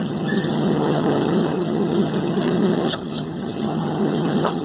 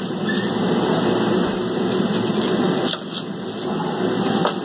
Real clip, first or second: second